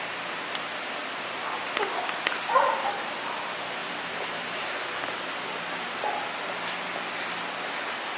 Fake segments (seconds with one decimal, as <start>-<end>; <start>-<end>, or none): 3.8-4.7